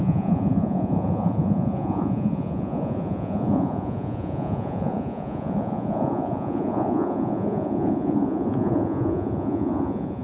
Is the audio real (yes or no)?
no